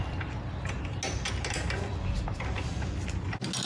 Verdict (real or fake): real